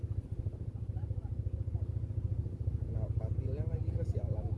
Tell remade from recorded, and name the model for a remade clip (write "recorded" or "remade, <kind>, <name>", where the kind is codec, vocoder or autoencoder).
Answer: recorded